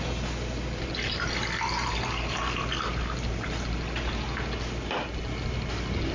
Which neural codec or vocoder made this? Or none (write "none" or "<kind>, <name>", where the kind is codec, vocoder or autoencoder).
none